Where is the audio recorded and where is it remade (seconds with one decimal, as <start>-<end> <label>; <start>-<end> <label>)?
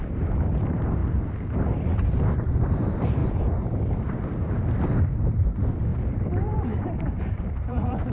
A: 0.0-1.0 remade; 1.0-2.3 recorded; 2.3-5.9 remade; 5.9-7.0 recorded; 7.0-8.1 remade